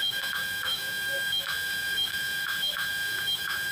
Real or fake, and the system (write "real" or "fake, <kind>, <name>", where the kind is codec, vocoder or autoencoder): fake, autoencoder, DAC-VAE